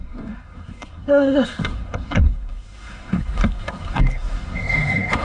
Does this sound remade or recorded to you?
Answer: remade